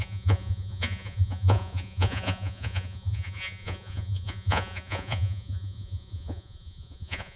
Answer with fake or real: fake